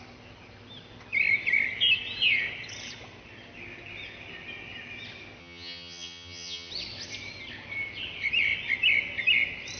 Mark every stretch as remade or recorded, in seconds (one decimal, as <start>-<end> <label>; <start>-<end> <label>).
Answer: 0.0-5.4 recorded; 5.4-6.7 remade; 6.7-9.8 recorded